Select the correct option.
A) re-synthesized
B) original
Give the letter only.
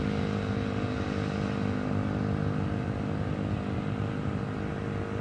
B